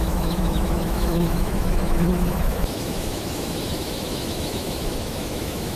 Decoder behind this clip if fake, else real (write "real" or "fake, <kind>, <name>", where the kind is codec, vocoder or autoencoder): fake, autoencoder, DAC-VAE